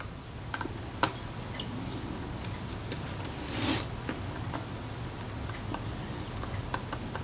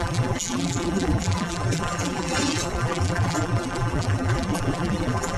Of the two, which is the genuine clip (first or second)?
first